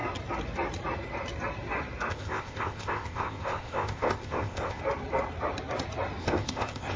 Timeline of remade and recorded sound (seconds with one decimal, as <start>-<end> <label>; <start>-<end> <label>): 0.0-2.1 recorded; 2.1-4.8 remade; 4.8-6.2 recorded; 6.2-7.0 remade